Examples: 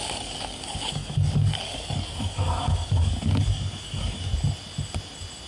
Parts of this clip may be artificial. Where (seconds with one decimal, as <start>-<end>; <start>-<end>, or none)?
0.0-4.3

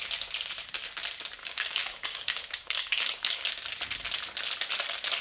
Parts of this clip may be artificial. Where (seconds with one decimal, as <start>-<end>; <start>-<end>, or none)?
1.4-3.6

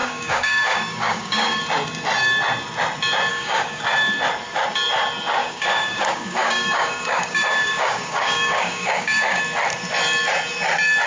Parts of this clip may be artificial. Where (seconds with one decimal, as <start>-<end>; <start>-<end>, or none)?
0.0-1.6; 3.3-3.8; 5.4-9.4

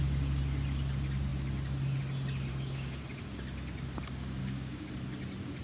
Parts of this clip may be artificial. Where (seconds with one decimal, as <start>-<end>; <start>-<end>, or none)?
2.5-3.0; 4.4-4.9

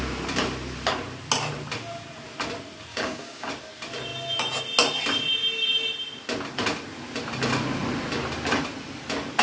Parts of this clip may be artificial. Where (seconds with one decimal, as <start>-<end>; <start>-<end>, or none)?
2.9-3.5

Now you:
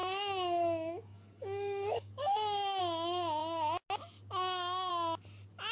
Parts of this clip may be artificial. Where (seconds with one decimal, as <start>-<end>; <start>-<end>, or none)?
0.0-2.8

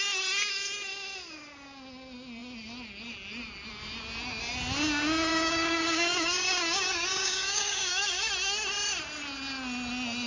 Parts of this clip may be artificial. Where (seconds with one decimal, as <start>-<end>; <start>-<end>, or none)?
5.3-8.3

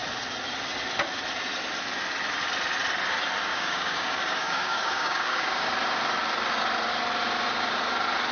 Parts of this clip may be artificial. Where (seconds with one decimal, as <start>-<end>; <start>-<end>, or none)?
3.5-5.7